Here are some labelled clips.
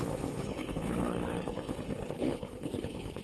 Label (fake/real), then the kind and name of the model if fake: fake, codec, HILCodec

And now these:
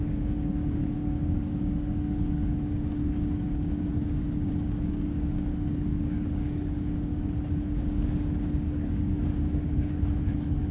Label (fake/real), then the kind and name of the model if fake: fake, codec, DAC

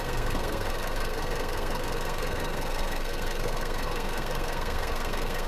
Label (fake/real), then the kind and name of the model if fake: fake, codec, SNAC